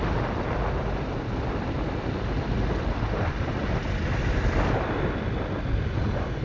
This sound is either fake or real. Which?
real